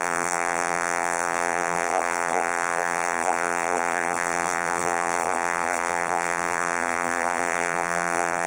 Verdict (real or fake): fake